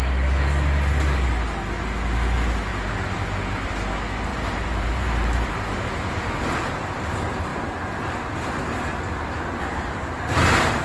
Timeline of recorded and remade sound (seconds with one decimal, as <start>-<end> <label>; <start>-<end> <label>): 0.0-2.7 recorded; 2.7-3.7 remade; 3.7-4.3 recorded; 4.3-5.9 remade; 5.9-10.8 recorded